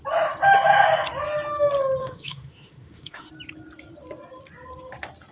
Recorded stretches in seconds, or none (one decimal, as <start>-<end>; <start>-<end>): 0.0-2.0; 3.3-5.3